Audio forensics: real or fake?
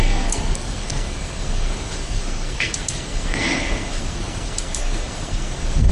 fake